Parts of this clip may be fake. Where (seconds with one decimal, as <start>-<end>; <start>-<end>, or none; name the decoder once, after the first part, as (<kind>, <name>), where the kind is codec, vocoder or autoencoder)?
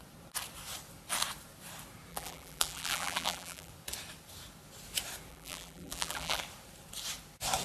2.1-3.7 (vocoder, BigVGAN v2); 5.3-6.4